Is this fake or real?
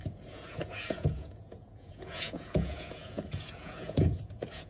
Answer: fake